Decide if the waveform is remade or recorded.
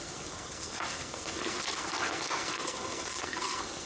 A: remade